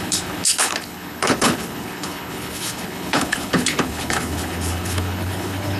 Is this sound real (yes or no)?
no